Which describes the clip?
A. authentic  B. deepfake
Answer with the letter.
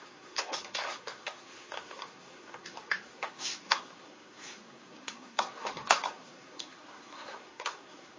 B